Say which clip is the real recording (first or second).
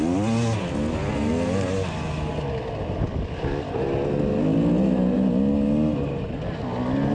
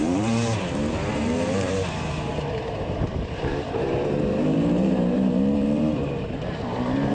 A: first